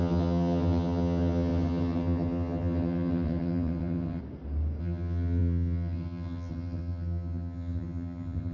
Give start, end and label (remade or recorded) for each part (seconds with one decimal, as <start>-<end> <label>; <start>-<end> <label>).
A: 0.0-4.2 remade; 4.2-4.8 recorded; 4.8-8.5 remade